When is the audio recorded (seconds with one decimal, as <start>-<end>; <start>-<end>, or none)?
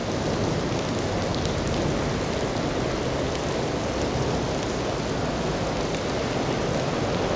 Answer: 0.0-7.4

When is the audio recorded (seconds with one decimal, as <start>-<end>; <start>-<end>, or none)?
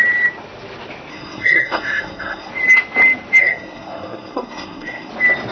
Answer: 0.0-1.1; 2.5-3.4; 5.1-5.5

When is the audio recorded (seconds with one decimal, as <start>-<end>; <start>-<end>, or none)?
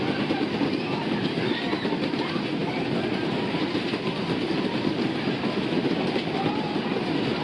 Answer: 0.0-7.4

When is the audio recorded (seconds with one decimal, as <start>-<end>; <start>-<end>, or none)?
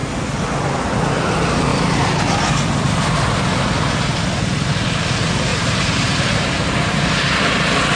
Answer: 0.0-1.7; 2.2-5.5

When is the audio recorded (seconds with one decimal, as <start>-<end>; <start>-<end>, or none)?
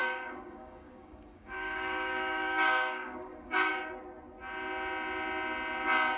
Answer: 3.7-6.2